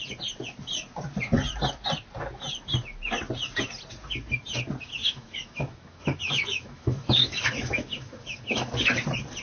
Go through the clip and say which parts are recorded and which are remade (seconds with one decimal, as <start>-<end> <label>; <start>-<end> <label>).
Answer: 0.0-5.0 recorded; 5.0-8.7 remade; 8.7-9.4 recorded